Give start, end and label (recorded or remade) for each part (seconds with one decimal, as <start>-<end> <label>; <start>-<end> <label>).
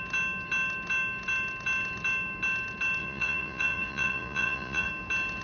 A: 0.0-3.0 recorded; 3.0-4.9 remade; 4.9-5.4 recorded